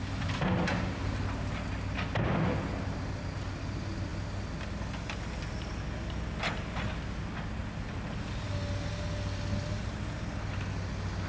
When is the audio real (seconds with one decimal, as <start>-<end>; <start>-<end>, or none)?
0.0-11.3